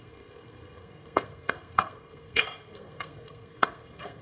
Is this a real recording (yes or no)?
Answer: no